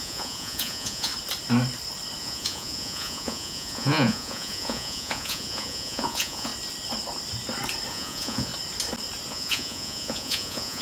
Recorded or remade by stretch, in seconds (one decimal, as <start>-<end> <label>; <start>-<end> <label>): 0.0-1.1 remade; 1.1-2.2 recorded; 2.2-6.5 remade; 6.5-7.9 recorded; 7.9-8.5 remade; 8.5-9.3 recorded; 9.3-10.8 remade